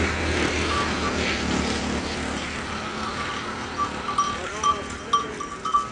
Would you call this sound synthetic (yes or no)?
no